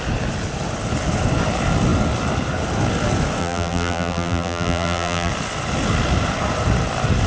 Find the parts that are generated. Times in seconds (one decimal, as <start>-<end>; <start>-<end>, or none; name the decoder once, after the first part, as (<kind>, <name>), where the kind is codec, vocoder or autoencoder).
3.4-5.3 (vocoder, BigVGAN v2)